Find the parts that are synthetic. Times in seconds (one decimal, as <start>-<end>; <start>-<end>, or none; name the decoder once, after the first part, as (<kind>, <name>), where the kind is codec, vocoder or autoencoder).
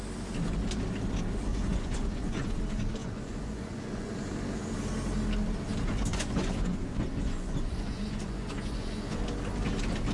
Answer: 1.5-2.6 (vocoder, Vocos); 3.0-4.1; 6.1-9.2